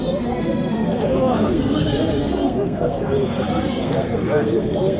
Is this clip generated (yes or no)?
yes